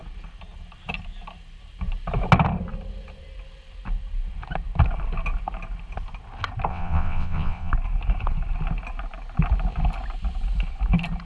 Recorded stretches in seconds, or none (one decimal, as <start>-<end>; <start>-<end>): 0.0-6.7; 7.7-11.3